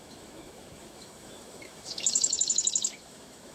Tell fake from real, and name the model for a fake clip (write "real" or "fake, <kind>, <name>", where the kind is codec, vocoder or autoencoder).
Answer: fake, autoencoder, DAC-VAE